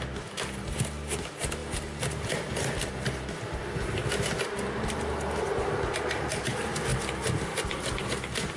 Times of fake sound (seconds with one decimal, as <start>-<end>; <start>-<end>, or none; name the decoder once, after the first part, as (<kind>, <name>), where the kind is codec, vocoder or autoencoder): none